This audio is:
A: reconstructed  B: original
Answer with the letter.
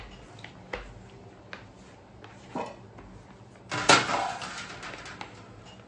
B